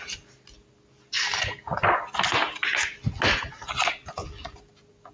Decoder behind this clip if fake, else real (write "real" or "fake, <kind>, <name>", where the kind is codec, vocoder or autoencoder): real